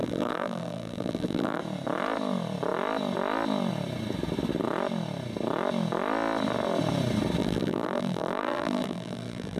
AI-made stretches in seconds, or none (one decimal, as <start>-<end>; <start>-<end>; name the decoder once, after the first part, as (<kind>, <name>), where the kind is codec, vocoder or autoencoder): 0.0-1.6 (vocoder, BigVGAN v2); 7.4-9.6